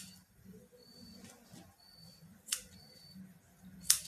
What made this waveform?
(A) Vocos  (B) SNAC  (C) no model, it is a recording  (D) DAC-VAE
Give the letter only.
C